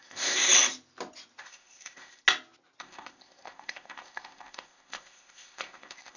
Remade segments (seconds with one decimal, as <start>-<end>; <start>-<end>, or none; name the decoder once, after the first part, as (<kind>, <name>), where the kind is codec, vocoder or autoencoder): 0.0-0.5 (codec, ZipCodec); 1.4-2.2; 2.8-6.2